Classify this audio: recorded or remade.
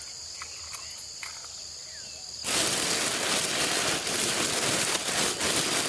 recorded